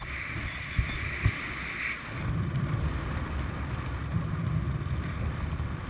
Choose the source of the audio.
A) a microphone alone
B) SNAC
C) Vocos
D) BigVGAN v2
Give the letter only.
A